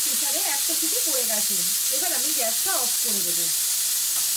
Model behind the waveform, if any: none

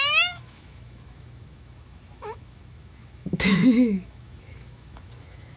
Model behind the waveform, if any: autoencoder, DAC-VAE